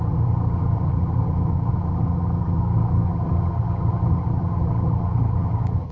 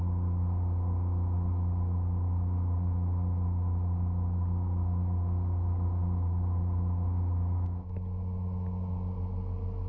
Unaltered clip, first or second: second